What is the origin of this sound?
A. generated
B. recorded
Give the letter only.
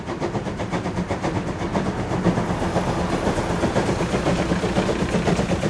B